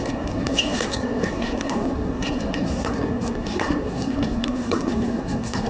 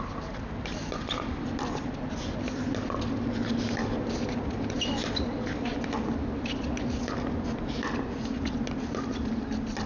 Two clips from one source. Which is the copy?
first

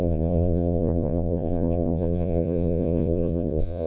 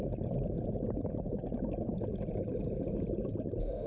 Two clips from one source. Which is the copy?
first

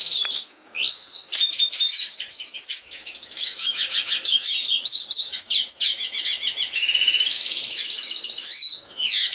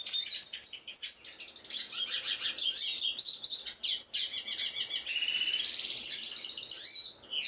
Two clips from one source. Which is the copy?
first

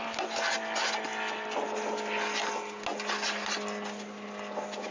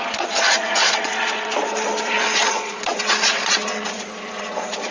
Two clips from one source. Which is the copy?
second